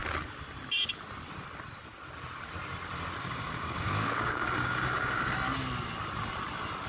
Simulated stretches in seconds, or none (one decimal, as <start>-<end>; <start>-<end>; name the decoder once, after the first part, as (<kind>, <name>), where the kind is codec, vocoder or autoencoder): 3.2-5.2 (codec, DAC)